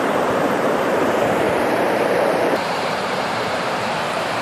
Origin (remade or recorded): remade